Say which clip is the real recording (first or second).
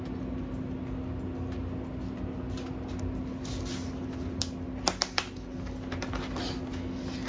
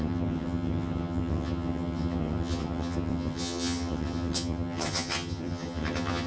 first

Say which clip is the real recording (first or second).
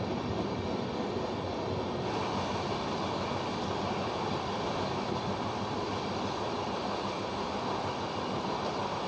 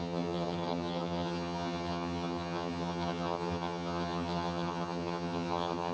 first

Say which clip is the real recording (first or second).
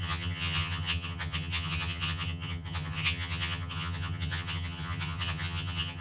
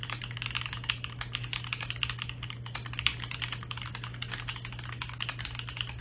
second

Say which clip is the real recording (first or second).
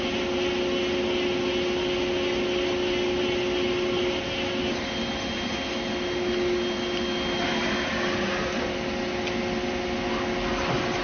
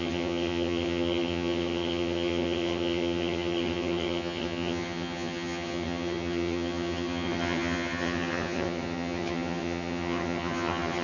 first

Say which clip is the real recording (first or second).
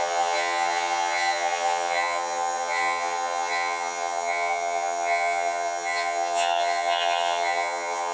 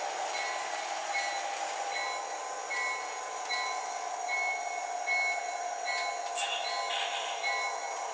second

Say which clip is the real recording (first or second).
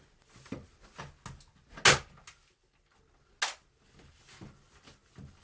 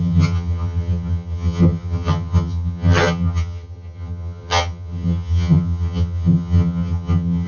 first